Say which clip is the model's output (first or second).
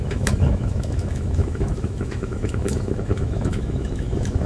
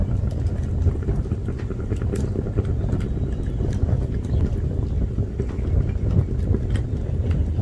first